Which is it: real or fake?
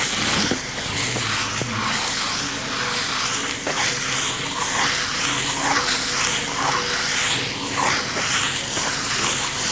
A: real